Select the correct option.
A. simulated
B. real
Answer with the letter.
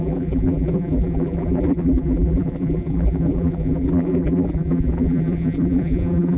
A